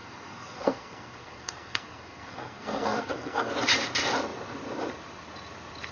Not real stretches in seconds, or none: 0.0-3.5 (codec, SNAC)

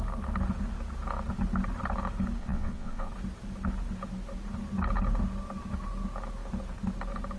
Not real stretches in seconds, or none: 2.4-3.1 (vocoder, WaveNeXt)

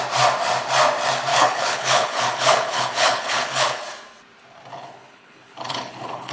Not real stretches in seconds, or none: 1.3-3.8 (codec, HILCodec); 4.7-6.3

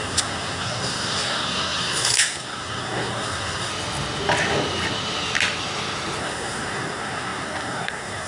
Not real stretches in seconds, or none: 0.0-3.7 (codec, SNAC); 6.2-8.3

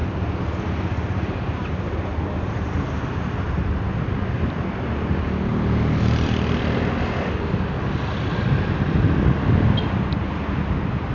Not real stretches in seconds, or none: none

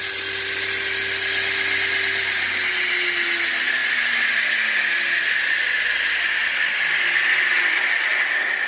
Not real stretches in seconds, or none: none

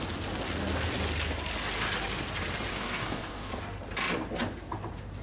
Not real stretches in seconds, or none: 2.7-3.5 (codec, DAC)